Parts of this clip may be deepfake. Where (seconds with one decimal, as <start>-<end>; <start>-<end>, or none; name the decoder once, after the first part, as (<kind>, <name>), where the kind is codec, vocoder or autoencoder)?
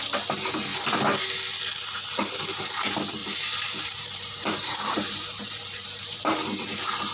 3.2-6.4 (vocoder, BigVGAN v2)